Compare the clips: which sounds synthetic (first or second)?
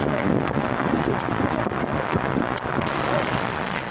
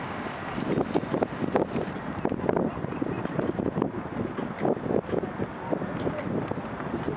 first